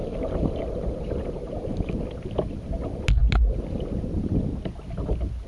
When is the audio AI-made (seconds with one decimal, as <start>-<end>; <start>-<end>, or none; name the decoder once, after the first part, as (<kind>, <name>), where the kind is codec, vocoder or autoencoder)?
0.0-1.9 (vocoder, BigVGAN v2)